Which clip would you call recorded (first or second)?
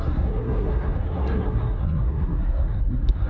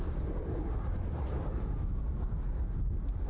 second